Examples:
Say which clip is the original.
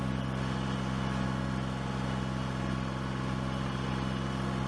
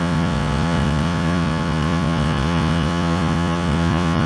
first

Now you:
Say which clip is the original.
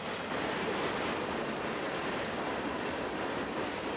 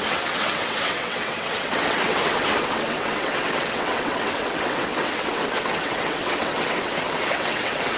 first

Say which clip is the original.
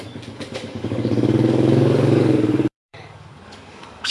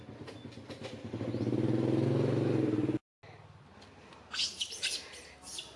second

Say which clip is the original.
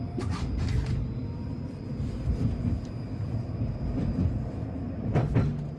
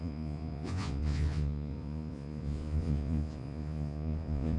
first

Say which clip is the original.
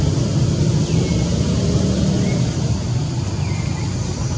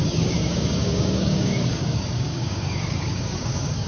first